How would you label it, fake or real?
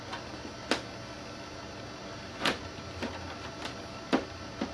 real